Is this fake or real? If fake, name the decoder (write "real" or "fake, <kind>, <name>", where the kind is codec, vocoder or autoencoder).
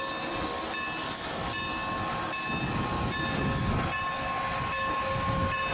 real